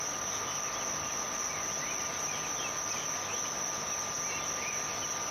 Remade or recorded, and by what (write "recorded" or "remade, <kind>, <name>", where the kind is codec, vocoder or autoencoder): recorded